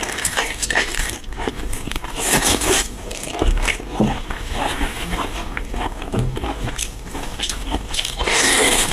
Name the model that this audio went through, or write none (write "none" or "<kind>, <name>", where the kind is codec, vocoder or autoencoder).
codec, DAC